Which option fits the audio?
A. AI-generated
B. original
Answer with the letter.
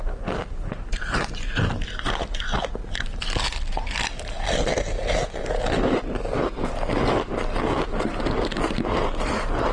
B